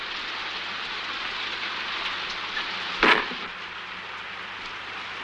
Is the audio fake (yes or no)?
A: no